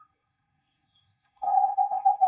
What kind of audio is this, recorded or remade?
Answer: remade